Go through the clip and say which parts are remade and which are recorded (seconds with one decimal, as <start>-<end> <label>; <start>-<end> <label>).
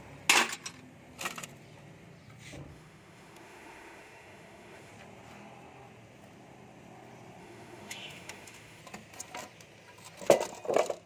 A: 0.0-2.7 recorded; 2.7-4.9 remade; 4.9-7.4 recorded; 7.4-8.8 remade; 8.8-11.1 recorded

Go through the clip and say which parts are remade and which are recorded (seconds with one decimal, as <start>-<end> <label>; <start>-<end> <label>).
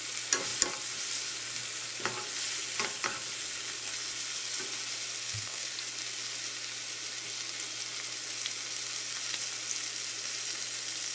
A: 0.0-5.2 recorded; 5.2-5.7 remade; 5.7-11.1 recorded